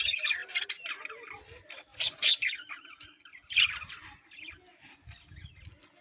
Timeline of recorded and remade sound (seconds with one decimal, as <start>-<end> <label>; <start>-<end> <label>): 0.0-6.0 recorded